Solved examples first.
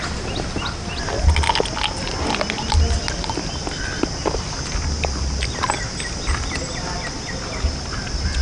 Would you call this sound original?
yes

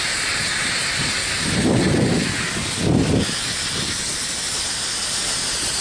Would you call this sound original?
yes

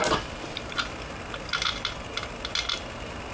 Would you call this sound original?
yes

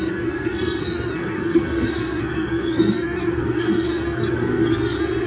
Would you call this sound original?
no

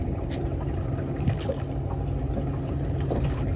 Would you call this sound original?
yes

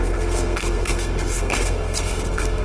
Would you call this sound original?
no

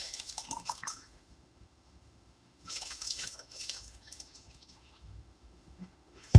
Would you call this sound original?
no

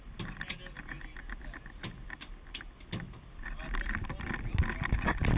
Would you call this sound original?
yes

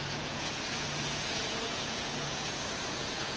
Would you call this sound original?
no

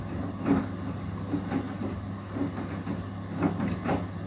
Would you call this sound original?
yes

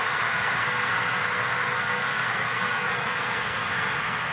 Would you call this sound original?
no